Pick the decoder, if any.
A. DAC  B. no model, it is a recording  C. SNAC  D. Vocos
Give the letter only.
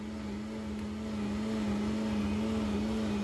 B